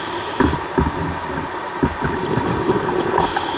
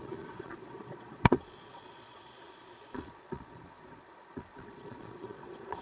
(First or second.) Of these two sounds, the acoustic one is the first